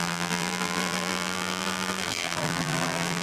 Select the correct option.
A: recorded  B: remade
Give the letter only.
B